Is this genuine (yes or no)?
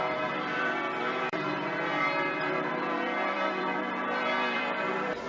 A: no